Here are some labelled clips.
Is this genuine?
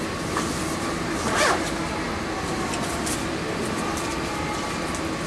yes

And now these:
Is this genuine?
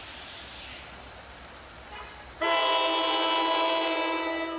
yes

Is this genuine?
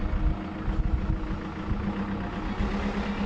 yes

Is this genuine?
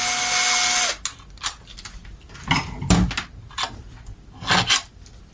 yes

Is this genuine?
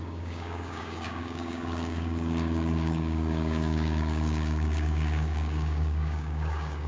no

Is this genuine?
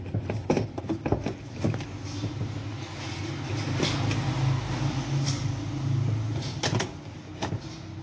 yes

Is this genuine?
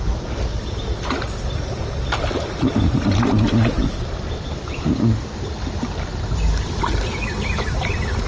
yes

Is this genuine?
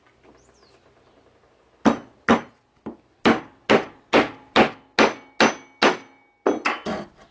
yes